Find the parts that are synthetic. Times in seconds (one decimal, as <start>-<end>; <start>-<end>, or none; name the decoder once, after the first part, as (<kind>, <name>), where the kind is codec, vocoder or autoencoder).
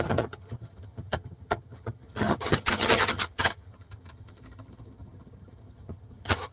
0.0-6.5 (vocoder, HiFi-GAN)